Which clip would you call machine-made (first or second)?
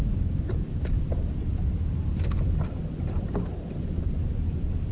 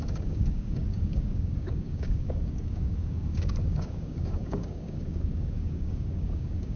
second